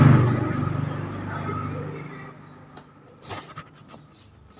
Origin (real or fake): real